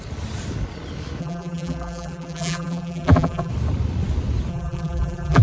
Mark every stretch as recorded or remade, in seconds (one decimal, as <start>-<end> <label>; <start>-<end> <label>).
0.0-1.2 recorded; 1.2-3.5 remade; 3.5-4.5 recorded; 4.5-5.4 remade

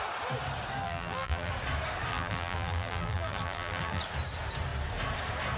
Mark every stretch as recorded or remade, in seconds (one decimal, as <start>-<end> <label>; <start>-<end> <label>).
0.0-0.8 recorded; 0.8-1.5 remade; 1.5-2.1 recorded; 2.1-4.0 remade; 4.0-5.6 recorded

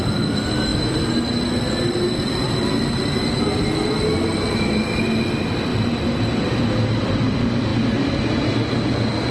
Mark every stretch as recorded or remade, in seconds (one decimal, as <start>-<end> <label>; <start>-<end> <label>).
0.0-9.3 recorded

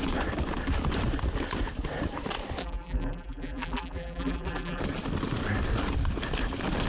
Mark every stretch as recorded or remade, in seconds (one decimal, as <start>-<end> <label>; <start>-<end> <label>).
0.0-2.6 recorded; 2.6-4.8 remade; 4.8-6.9 recorded